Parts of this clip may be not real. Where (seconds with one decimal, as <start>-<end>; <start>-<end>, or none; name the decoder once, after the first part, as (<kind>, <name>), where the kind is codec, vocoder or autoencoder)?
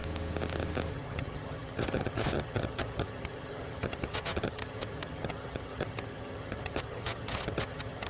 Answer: 0.9-8.1 (vocoder, HiFi-GAN)